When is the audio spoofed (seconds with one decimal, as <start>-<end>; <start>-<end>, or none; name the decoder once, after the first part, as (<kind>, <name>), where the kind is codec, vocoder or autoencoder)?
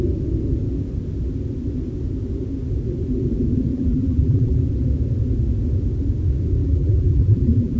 3.7-4.6 (vocoder, BigVGAN v2); 6.6-7.8